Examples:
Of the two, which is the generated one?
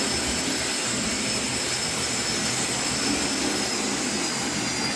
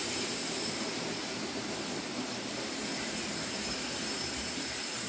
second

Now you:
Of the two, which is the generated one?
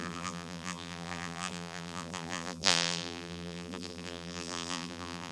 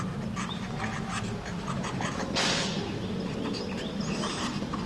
first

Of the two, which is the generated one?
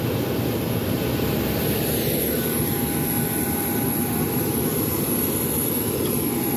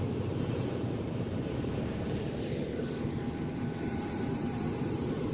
second